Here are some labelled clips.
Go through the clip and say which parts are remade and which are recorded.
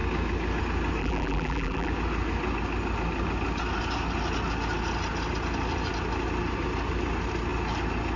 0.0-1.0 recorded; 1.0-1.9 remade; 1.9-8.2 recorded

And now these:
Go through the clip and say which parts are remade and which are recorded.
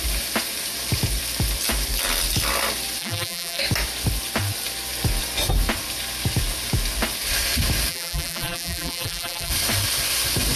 0.0-3.0 recorded; 3.0-3.6 remade; 3.6-7.9 recorded; 7.9-9.5 remade; 9.5-10.6 recorded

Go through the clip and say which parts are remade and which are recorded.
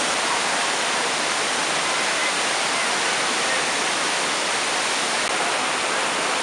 0.0-6.4 recorded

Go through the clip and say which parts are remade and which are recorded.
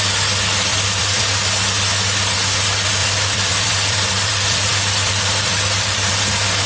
0.0-0.7 recorded; 0.7-1.2 remade; 1.2-3.0 recorded; 3.0-6.1 remade; 6.1-6.7 recorded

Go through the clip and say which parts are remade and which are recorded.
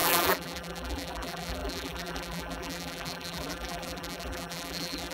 0.0-5.1 remade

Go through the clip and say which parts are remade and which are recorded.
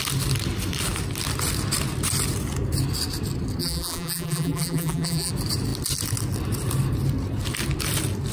0.0-3.6 recorded; 3.6-5.3 remade; 5.3-8.3 recorded